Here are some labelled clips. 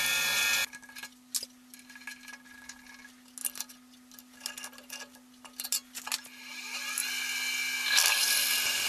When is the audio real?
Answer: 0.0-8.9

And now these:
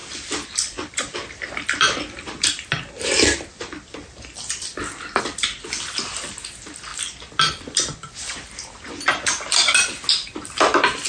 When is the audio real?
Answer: 5.2-6.9; 8.9-11.1

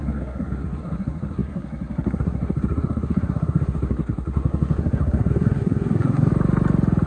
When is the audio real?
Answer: 6.3-7.1

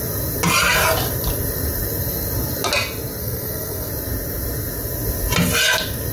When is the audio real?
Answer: 0.0-3.2; 3.9-6.1

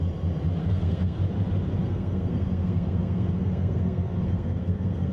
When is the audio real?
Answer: 0.0-0.6; 1.2-1.8